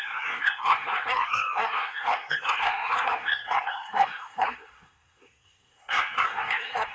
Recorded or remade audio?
remade